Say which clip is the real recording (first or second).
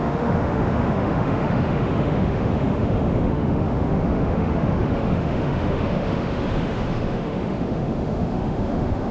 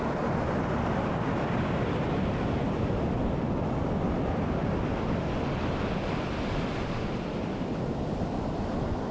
second